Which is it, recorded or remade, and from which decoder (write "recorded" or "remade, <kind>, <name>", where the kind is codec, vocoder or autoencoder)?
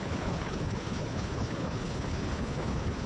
remade, codec, HILCodec